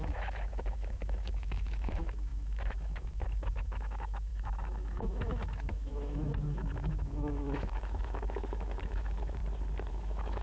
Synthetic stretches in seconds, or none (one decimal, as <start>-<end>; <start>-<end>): 0.0-9.4; 9.9-10.4